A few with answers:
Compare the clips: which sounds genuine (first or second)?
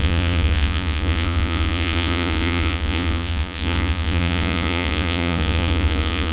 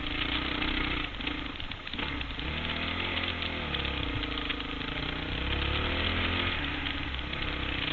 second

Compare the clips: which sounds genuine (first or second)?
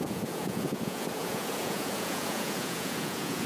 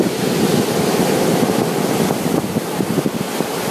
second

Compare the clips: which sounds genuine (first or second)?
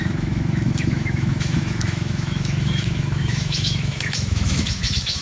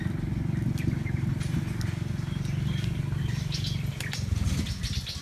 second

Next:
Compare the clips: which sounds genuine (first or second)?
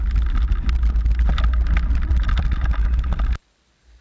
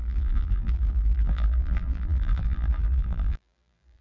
first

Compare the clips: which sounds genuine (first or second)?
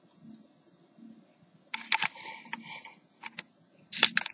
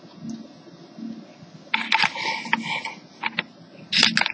second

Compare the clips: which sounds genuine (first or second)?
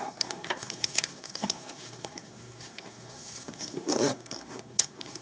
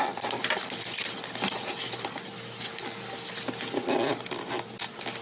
second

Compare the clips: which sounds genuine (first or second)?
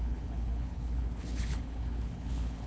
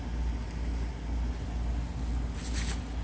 second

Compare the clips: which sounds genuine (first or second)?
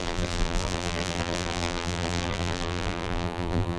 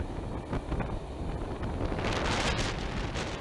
second